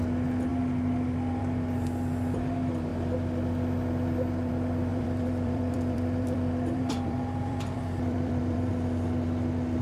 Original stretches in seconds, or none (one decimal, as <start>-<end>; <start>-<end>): 0.0-4.9; 8.7-9.8